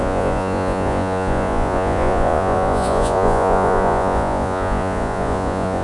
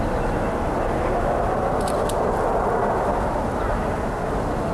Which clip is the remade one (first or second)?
first